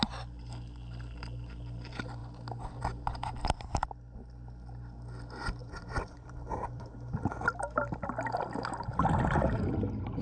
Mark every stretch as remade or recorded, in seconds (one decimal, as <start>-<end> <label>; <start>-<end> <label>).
0.0-5.6 recorded; 5.6-7.3 remade; 7.3-10.2 recorded